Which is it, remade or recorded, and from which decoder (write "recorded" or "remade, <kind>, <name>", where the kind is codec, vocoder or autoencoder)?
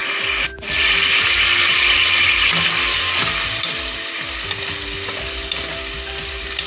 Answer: recorded